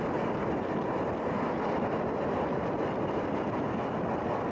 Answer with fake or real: real